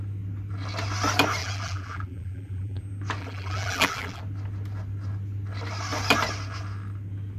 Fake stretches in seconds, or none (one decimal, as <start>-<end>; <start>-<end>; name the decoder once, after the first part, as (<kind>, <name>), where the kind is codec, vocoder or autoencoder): 1.4-2.8 (vocoder, BigVGAN v2); 3.2-4.2